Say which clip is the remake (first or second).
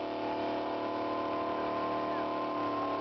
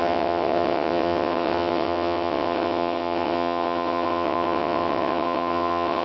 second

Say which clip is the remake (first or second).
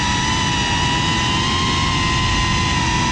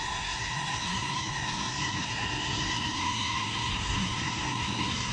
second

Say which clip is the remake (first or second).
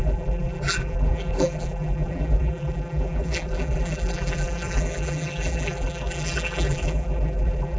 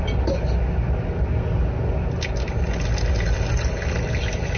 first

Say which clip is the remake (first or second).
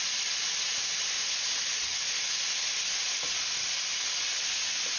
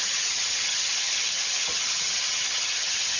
second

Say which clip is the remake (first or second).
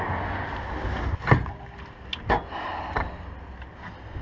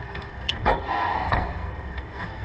second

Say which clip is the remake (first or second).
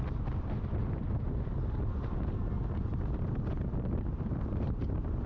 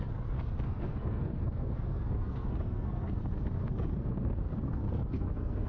second